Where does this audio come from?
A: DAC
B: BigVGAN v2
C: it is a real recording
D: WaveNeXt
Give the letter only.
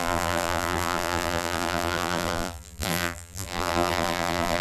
B